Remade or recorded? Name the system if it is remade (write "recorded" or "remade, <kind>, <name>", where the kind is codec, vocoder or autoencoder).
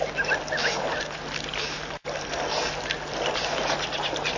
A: recorded